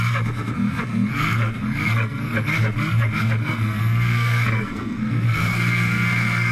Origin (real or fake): fake